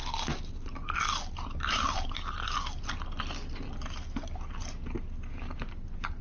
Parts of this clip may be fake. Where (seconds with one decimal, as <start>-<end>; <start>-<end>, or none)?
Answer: none